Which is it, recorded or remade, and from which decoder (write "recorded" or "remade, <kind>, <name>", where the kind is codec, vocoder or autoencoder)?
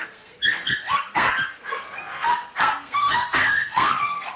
remade, codec, SNAC